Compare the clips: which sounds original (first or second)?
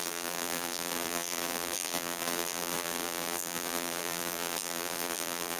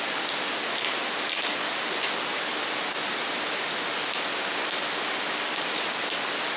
second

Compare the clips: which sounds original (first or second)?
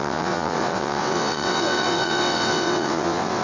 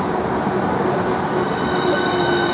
second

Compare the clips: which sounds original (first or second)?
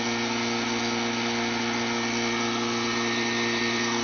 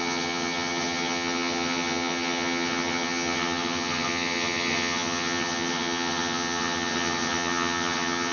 first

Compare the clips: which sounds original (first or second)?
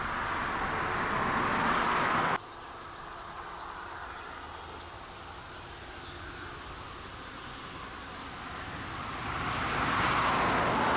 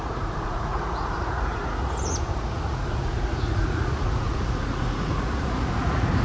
first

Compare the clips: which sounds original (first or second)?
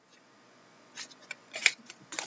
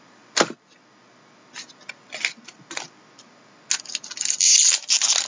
second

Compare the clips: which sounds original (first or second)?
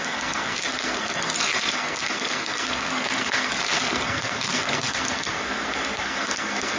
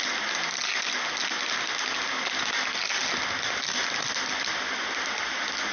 second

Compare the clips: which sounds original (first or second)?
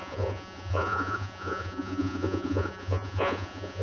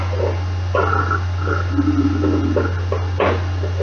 second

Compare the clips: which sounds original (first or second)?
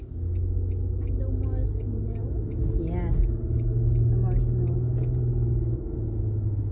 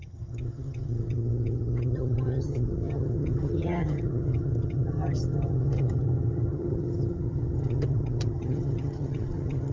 first